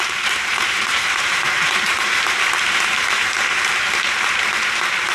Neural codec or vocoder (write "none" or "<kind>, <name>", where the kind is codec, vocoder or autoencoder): vocoder, BigVGAN v2